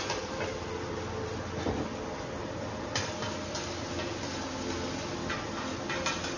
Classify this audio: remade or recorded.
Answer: recorded